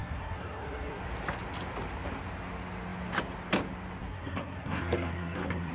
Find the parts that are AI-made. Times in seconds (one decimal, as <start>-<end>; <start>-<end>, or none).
0.0-1.0; 4.0-5.7